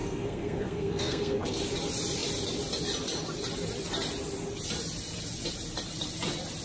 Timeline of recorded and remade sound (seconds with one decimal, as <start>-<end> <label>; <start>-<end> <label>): 0.0-1.6 remade; 1.6-6.6 recorded

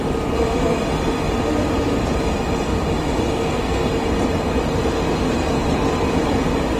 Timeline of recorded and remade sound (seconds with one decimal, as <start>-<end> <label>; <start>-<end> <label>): 0.0-3.3 recorded; 3.3-3.9 remade; 3.9-6.8 recorded

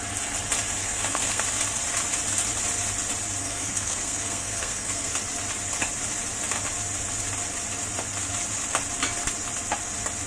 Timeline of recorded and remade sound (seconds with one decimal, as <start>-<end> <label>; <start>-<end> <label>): 0.0-0.8 recorded; 0.8-1.4 remade; 1.4-3.4 recorded; 3.4-5.1 remade; 5.1-10.3 recorded

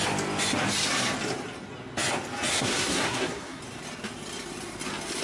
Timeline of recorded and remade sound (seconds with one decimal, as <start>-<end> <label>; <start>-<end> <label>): 0.0-2.5 recorded; 2.5-3.6 remade; 3.6-5.2 recorded

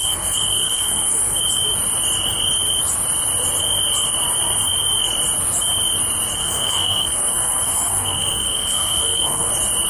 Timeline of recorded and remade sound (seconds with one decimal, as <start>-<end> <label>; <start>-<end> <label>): 0.0-1.4 remade; 1.4-6.4 recorded; 6.4-9.5 remade; 9.5-9.9 recorded

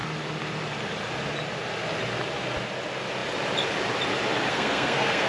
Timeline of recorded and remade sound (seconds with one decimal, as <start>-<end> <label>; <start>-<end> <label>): 0.0-4.5 recorded; 4.5-5.3 remade

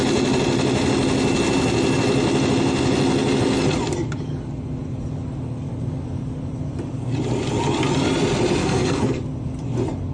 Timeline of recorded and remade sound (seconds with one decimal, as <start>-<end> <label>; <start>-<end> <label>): 0.0-8.6 recorded; 8.6-9.2 remade; 9.2-10.1 recorded